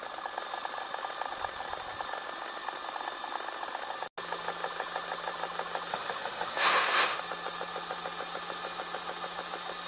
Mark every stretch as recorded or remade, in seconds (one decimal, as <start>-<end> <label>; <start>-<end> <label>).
0.0-5.9 recorded; 5.9-7.2 remade; 7.2-9.9 recorded